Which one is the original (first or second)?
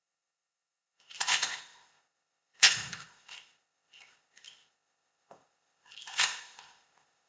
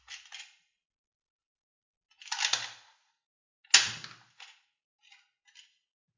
second